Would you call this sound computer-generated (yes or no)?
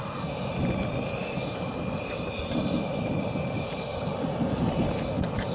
no